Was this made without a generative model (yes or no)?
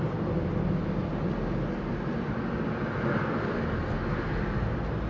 yes